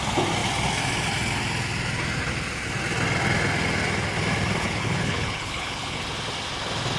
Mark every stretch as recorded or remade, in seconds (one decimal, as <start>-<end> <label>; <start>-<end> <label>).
0.0-4.6 recorded; 4.6-6.0 remade; 6.0-7.0 recorded